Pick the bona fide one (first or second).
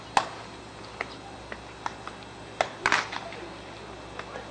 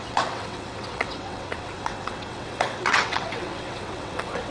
first